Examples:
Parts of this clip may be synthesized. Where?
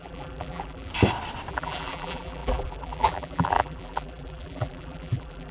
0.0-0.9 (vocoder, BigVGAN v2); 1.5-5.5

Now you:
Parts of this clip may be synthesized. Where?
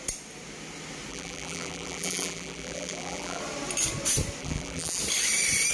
1.1-3.4 (vocoder, BigVGAN v2); 4.4-5.0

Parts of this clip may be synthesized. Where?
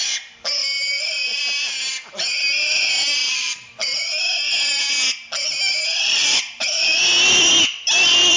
0.6-1.4 (vocoder, BigVGAN v2); 3.2-4.0; 5.9-7.0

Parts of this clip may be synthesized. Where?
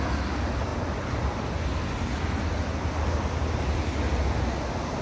none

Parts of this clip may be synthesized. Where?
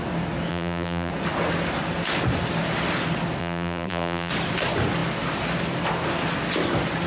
0.5-1.1 (vocoder, BigVGAN v2); 3.4-4.3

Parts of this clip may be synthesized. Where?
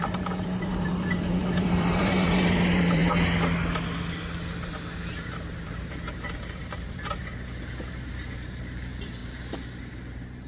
0.0-3.0 (vocoder, BigVGAN v2); 5.0-7.2; 7.9-10.5